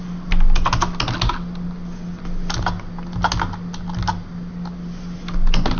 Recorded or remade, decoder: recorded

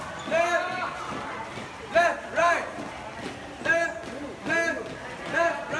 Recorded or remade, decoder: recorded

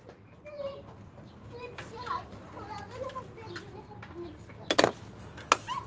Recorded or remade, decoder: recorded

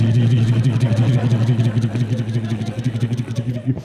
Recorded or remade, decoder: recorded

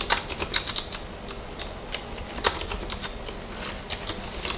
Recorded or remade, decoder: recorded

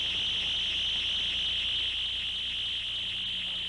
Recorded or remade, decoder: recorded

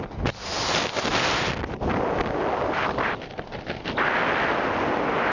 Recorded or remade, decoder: recorded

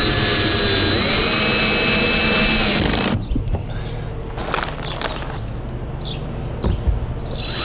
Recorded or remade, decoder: recorded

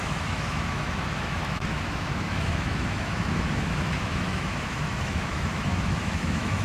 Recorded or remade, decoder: remade, autoencoder, DAC-VAE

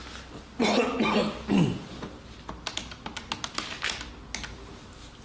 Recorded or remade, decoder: recorded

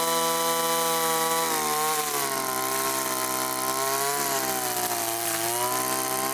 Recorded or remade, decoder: recorded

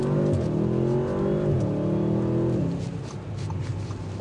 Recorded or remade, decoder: recorded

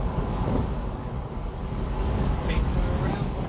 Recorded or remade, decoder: remade, codec, DAC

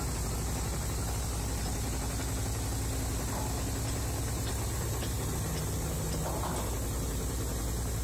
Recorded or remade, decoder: recorded